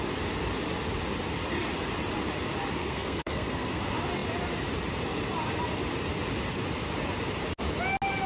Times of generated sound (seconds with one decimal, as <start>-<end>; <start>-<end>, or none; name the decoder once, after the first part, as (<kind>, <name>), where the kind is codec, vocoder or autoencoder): 2.8-3.8 (codec, SNAC)